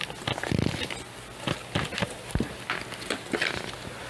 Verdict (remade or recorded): recorded